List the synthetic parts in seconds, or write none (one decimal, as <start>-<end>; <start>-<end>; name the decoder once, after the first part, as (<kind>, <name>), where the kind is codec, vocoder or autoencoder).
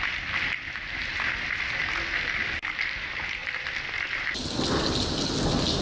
none